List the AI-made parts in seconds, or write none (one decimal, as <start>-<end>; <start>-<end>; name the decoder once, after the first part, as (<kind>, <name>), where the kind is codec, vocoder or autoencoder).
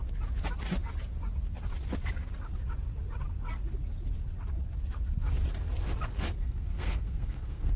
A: 6.4-7.8 (codec, SNAC)